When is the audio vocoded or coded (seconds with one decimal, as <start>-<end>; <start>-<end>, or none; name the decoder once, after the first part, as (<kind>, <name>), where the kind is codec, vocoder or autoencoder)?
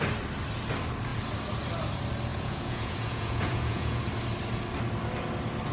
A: 2.3-4.0 (vocoder, Vocos)